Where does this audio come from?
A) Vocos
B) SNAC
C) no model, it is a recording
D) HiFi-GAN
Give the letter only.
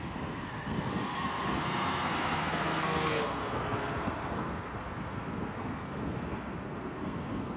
B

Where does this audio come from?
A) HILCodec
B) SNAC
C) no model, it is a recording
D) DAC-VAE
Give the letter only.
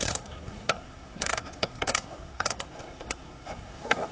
B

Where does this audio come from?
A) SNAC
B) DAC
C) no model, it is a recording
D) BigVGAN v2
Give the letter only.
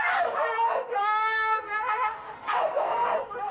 A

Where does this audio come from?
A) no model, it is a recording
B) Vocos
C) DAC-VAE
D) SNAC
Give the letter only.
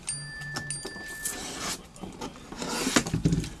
A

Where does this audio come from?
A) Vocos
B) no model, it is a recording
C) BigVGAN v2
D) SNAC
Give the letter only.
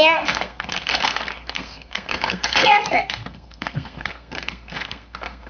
D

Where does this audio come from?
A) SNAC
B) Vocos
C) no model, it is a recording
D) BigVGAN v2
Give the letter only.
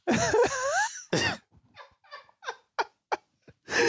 C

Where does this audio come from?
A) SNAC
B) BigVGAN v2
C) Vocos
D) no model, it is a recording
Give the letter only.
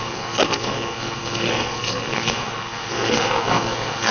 A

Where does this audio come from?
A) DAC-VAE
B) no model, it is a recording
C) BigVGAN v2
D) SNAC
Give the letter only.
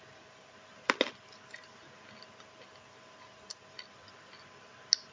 B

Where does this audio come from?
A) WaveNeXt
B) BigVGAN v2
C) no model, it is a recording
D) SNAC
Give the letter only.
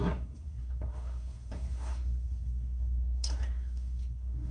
D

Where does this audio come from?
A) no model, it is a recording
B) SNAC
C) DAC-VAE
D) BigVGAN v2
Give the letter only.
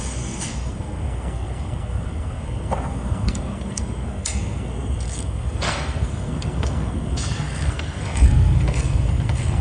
B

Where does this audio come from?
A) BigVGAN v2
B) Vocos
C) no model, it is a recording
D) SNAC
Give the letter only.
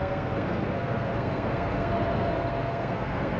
D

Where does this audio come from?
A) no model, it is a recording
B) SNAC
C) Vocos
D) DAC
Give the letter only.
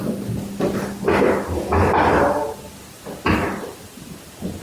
A